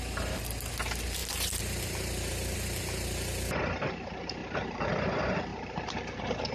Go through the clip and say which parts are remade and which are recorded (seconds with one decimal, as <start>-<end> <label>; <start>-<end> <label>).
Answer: 0.0-4.4 recorded; 4.4-4.9 remade; 4.9-5.5 recorded; 5.5-6.5 remade

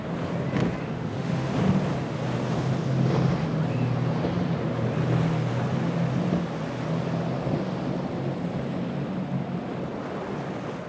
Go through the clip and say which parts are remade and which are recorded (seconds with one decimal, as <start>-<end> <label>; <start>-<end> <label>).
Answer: 0.0-0.8 recorded; 0.8-1.5 remade; 1.5-10.9 recorded